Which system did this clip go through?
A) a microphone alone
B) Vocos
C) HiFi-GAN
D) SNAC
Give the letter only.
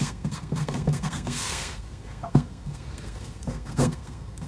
D